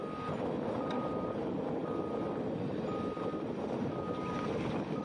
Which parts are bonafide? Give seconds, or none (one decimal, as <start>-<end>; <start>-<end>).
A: 0.0-0.7; 1.8-5.0